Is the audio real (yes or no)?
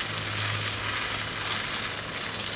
yes